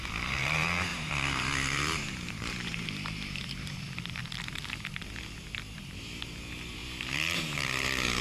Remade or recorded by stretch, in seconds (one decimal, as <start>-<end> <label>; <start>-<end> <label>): 0.0-8.2 remade